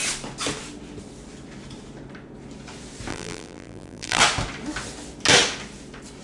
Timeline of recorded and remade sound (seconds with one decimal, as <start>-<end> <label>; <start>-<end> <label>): 0.0-3.1 recorded; 3.1-4.2 remade; 4.2-6.2 recorded